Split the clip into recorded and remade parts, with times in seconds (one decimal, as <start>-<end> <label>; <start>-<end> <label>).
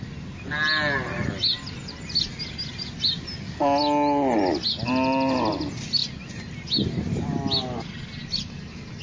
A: 0.0-9.0 recorded